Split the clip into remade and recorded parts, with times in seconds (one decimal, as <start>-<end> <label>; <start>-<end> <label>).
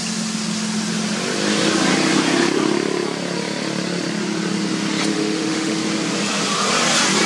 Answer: 0.0-5.1 recorded; 5.1-5.8 remade; 5.8-7.3 recorded